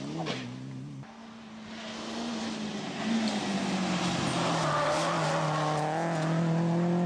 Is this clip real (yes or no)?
yes